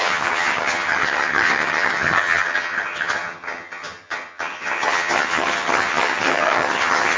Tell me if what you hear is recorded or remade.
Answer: remade